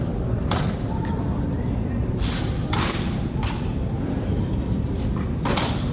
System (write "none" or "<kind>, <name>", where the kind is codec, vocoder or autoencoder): none